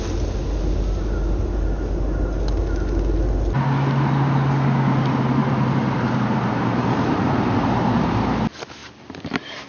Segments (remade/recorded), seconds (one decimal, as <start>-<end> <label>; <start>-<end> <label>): 0.0-5.4 recorded; 5.4-8.4 remade; 8.4-8.8 recorded; 8.8-9.7 remade

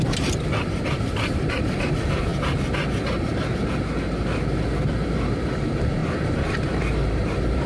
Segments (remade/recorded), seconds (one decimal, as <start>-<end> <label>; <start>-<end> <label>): 0.0-2.3 remade; 2.3-4.9 recorded; 4.9-6.0 remade; 6.0-6.7 recorded; 6.7-7.7 remade

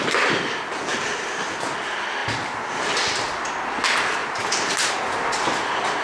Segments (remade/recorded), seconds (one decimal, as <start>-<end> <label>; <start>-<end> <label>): 0.0-6.0 recorded

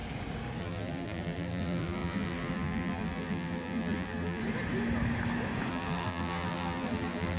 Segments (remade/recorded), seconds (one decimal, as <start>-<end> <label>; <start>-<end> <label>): 0.0-0.6 recorded; 0.6-4.4 remade; 4.4-5.7 recorded; 5.7-7.4 remade

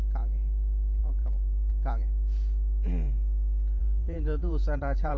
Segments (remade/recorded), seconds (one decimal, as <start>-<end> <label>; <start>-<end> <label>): 0.0-1.0 recorded; 1.0-1.7 remade; 1.7-3.8 recorded; 3.8-5.2 remade

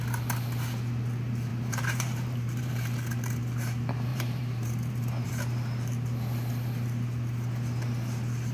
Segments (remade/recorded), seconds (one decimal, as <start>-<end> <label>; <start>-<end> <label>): 0.0-1.5 recorded; 1.5-2.7 remade; 2.7-4.1 recorded; 4.1-5.3 remade; 5.3-8.5 recorded